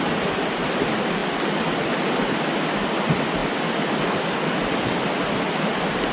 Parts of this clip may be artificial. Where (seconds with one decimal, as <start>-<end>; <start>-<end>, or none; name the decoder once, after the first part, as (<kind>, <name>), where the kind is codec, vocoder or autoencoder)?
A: none

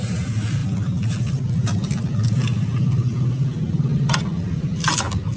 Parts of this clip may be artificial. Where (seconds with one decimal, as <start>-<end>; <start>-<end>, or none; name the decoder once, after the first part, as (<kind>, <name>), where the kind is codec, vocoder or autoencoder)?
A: none

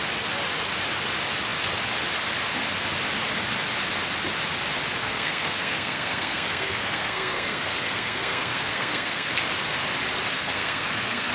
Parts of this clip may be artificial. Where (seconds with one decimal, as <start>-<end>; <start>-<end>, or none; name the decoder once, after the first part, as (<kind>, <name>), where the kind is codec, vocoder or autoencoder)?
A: 5.0-9.3 (codec, SNAC); 10.3-11.3

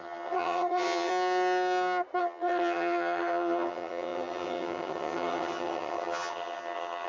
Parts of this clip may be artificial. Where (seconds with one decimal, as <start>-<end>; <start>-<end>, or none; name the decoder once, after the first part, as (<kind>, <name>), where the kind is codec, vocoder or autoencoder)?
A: 0.0-1.1 (vocoder, HiFi-GAN); 2.2-7.1